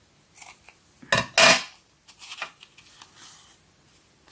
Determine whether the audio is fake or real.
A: real